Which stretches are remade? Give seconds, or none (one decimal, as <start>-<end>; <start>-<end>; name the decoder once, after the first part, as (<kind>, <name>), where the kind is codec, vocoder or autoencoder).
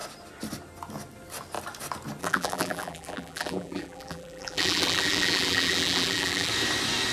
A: 2.2-6.5 (vocoder, BigVGAN v2)